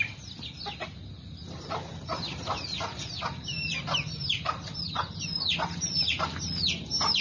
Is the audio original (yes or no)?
yes